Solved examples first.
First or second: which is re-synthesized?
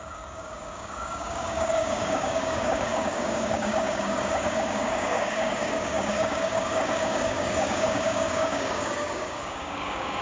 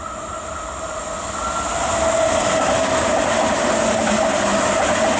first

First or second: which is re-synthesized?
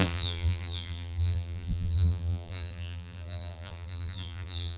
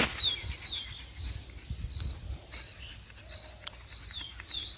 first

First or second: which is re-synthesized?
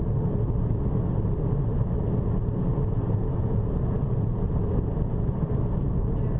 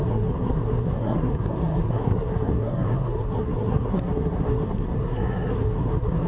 second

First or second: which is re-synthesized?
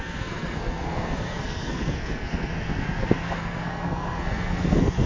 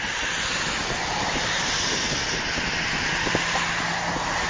first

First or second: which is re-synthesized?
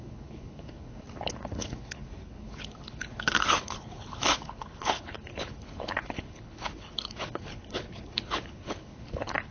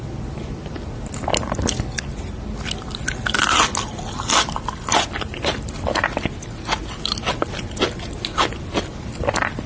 first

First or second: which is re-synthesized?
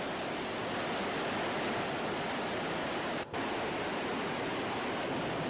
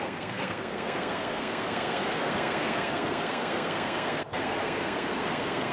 second